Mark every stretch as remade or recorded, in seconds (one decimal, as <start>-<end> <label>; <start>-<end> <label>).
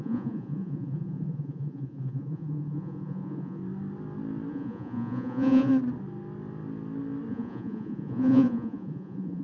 0.0-3.6 remade; 3.6-4.5 recorded; 4.5-5.7 remade; 5.7-7.3 recorded; 7.3-9.4 remade